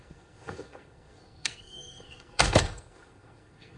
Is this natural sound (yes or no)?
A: no